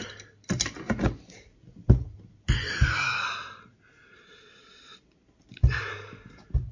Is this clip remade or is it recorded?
recorded